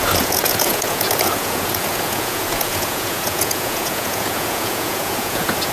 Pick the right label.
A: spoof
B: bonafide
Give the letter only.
A